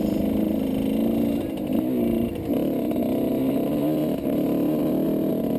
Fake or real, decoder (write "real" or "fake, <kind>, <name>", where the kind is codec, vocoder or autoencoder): real